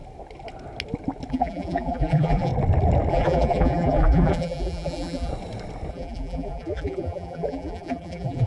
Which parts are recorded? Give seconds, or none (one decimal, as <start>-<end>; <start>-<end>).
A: 0.0-1.3; 2.5-3.1; 5.3-5.9